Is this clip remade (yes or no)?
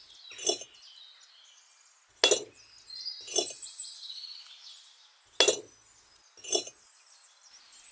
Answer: no